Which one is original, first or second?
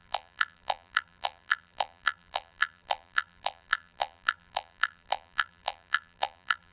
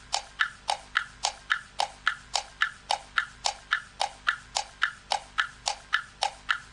second